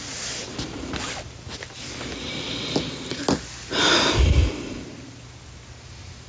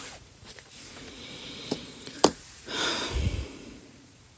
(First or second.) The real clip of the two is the first